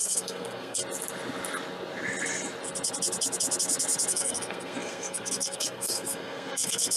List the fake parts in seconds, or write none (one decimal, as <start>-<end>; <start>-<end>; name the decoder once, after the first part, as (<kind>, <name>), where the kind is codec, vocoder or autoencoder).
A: 0.0-0.8 (codec, SNAC); 4.1-7.0